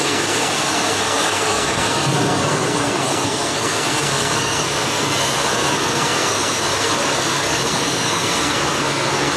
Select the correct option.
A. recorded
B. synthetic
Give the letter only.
B